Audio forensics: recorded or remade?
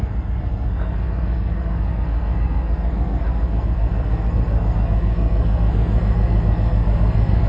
remade